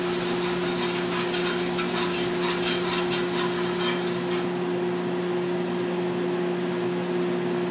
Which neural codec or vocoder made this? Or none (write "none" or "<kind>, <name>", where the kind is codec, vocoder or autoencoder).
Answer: none